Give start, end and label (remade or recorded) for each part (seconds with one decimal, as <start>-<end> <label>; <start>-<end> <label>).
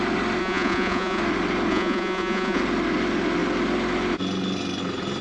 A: 0.0-0.4 recorded; 0.4-1.2 remade; 1.2-1.7 recorded; 1.7-2.6 remade; 2.6-5.2 recorded